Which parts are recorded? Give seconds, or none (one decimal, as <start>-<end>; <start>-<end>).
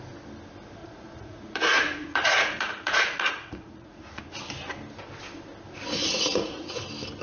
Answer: 0.0-0.8; 4.2-6.0; 6.8-7.2